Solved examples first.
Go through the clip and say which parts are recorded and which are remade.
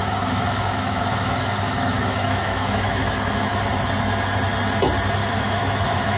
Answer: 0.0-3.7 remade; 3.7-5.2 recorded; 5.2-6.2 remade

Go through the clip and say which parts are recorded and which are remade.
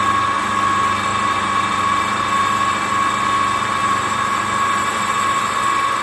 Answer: 0.0-1.1 recorded; 1.1-2.9 remade; 2.9-3.8 recorded; 3.8-5.4 remade; 5.4-6.0 recorded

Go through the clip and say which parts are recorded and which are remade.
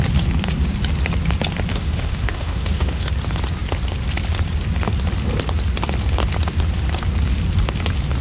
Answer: 0.0-1.7 recorded; 1.7-3.1 remade; 3.1-8.2 recorded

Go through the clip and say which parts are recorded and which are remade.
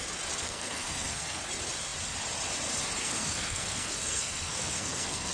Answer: 0.0-0.4 recorded; 0.4-1.4 remade; 1.4-3.0 recorded; 3.0-5.3 remade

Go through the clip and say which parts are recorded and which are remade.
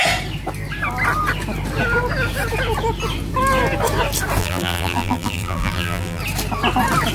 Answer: 0.0-4.4 recorded; 4.4-6.2 remade; 6.2-7.1 recorded